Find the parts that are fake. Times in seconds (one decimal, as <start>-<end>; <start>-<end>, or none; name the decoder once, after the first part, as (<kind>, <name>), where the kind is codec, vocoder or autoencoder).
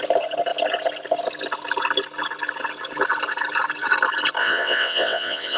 4.4-5.6 (vocoder, WaveNeXt)